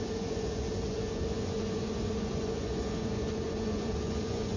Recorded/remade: remade